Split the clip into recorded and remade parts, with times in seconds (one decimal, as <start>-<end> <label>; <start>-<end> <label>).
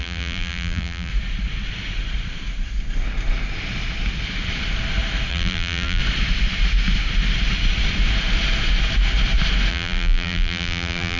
0.0-1.1 remade; 1.1-5.3 recorded; 5.3-6.0 remade; 6.0-9.7 recorded; 9.7-11.2 remade